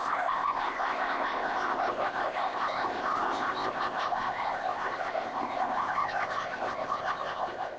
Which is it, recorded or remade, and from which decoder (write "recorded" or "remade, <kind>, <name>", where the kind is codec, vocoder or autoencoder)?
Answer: remade, codec, ZipCodec